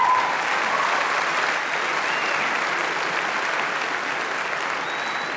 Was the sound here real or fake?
real